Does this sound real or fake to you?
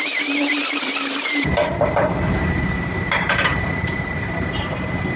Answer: fake